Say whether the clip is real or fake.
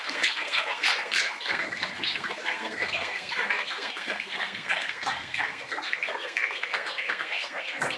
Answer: fake